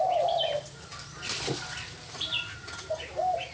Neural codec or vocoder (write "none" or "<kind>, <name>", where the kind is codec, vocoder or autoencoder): none